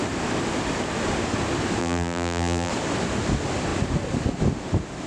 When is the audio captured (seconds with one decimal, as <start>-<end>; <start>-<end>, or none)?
0.0-1.8; 2.7-5.1